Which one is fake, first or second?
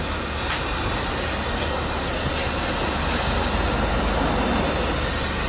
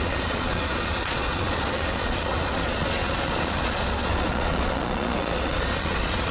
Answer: second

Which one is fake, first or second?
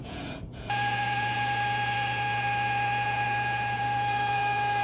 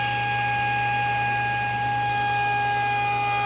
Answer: first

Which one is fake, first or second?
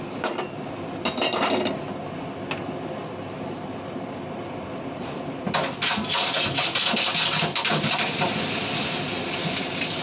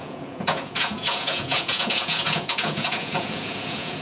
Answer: second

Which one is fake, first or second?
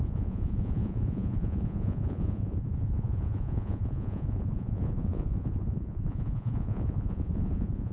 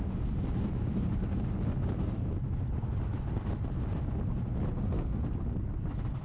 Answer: first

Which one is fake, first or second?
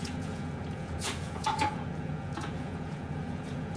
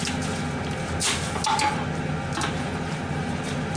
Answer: first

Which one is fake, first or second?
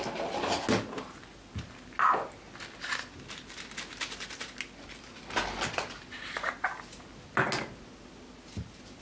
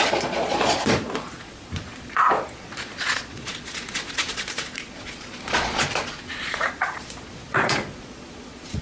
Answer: second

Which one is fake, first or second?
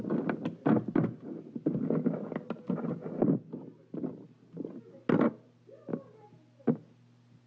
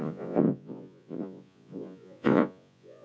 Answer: second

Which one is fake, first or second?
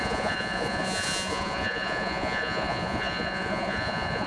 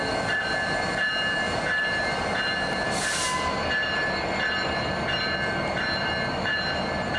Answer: first